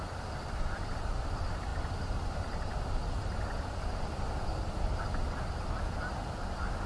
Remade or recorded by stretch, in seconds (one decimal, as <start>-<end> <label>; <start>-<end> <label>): 0.0-6.9 recorded